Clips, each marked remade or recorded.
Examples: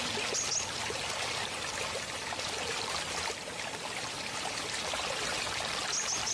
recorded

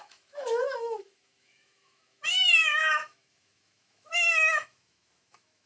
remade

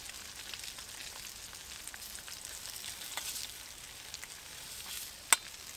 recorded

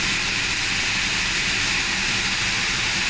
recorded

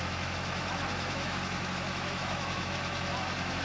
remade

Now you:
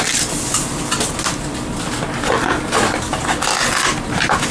recorded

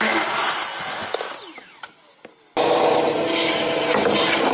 recorded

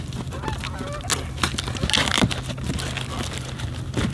recorded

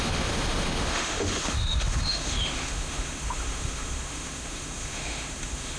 remade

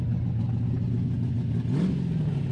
recorded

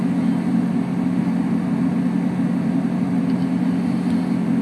recorded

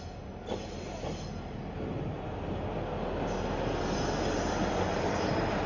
recorded